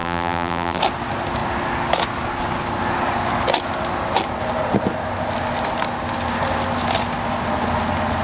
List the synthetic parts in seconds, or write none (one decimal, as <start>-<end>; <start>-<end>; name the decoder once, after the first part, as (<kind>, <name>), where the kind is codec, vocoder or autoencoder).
0.0-0.8 (vocoder, BigVGAN v2)